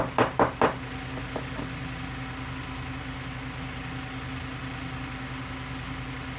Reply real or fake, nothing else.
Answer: real